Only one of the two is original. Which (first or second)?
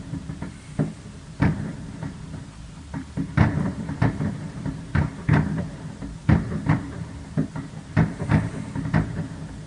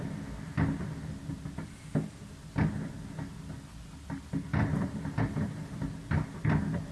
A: second